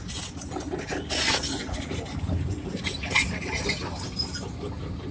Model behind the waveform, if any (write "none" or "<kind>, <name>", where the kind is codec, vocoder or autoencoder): none